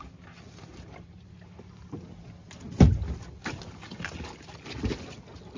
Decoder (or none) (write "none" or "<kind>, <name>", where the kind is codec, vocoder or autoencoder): none